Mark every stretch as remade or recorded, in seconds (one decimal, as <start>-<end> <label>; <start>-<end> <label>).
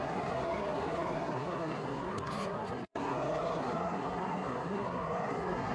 0.0-5.7 remade